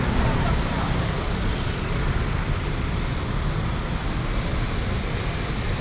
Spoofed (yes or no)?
yes